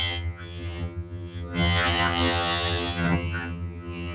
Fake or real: fake